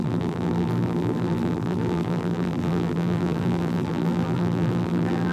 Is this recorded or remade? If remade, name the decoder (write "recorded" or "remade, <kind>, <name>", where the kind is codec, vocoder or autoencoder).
remade, vocoder, BigVGAN v2